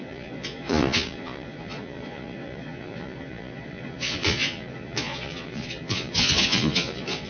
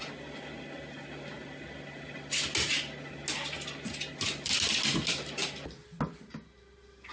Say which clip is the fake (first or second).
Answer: first